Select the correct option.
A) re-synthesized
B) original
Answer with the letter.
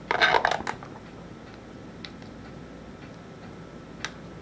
B